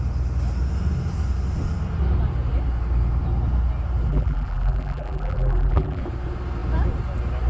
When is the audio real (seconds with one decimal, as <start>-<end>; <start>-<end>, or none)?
0.0-4.1; 6.0-7.5